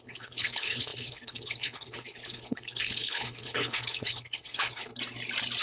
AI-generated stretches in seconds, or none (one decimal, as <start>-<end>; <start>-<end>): 0.0-4.9